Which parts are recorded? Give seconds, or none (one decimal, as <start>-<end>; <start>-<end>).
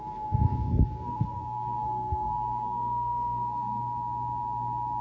3.8-5.0